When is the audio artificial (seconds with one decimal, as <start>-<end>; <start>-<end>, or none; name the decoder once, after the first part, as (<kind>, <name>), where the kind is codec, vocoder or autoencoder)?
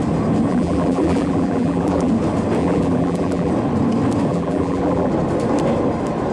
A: 0.5-2.1 (vocoder, BigVGAN v2); 2.6-3.5; 4.3-5.1